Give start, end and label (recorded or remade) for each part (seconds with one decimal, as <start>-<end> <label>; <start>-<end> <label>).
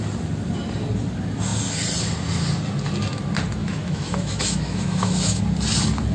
0.0-3.6 recorded; 3.6-5.4 remade; 5.4-6.1 recorded